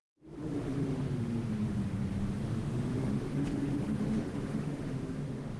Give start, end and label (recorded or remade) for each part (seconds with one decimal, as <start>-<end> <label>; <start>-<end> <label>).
0.0-1.8 remade; 1.8-2.4 recorded; 2.4-5.6 remade